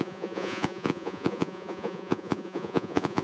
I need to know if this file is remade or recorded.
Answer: remade